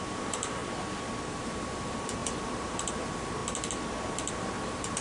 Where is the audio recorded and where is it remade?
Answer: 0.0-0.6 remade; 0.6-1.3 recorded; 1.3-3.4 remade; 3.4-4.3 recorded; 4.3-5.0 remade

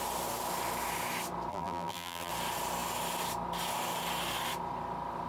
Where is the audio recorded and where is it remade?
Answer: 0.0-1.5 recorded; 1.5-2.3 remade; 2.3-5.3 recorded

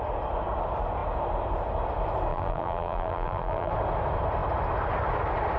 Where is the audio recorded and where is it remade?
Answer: 0.0-2.3 recorded; 2.3-3.7 remade; 3.7-5.6 recorded

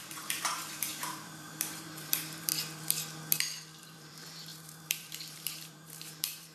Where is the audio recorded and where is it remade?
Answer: 0.0-2.5 remade; 2.5-3.8 recorded; 3.8-6.5 remade

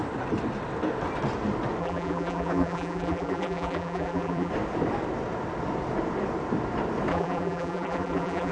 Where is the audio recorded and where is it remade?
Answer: 0.0-1.8 recorded; 1.8-4.5 remade; 4.5-7.1 recorded; 7.1-8.5 remade

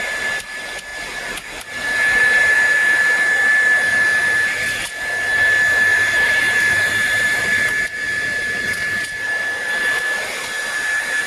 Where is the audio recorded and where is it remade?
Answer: 0.0-5.9 recorded; 5.9-7.6 remade; 7.6-11.3 recorded

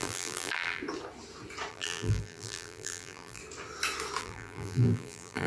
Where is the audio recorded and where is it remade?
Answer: 0.0-0.8 remade; 0.8-1.7 recorded; 1.7-3.4 remade; 3.4-4.2 recorded; 4.2-5.5 remade